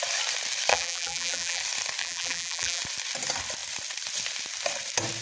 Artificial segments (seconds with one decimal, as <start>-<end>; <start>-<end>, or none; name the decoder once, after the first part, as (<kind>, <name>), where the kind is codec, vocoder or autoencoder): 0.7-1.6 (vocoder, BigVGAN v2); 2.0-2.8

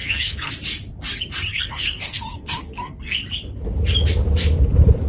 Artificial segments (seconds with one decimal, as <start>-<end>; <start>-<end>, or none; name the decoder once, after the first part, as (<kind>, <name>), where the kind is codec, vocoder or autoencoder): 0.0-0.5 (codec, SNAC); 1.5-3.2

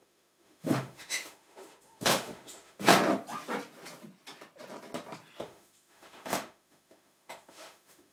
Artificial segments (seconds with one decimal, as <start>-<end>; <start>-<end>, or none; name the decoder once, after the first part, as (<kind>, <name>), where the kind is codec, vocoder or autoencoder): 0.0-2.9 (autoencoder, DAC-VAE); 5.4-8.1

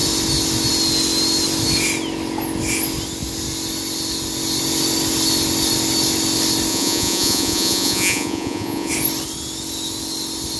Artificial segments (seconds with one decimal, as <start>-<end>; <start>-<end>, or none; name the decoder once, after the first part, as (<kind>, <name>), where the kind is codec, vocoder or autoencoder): 6.7-8.9 (vocoder, Vocos)

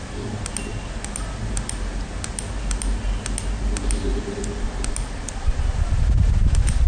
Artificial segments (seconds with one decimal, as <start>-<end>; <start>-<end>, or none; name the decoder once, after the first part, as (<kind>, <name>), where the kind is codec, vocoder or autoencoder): none

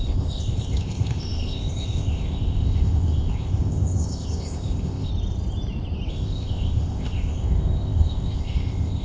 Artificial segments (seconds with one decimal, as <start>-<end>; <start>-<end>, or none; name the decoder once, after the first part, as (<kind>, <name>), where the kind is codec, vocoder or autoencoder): 0.0-5.1 (codec, ZipCodec); 6.1-9.0

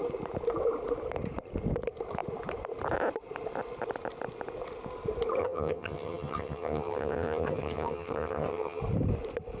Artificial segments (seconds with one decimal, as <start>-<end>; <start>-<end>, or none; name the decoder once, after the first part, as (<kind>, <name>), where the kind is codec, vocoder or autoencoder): 5.4-8.8 (vocoder, HiFi-GAN)